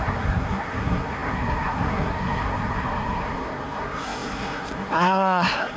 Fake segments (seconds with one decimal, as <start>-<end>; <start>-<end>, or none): 0.0-5.8